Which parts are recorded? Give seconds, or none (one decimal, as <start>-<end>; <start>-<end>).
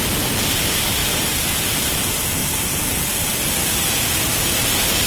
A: 0.0-1.0; 1.5-2.4; 2.9-3.3; 4.6-5.1